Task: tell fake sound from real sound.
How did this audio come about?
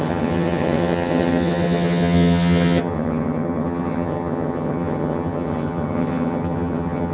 fake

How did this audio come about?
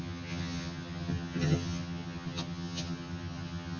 fake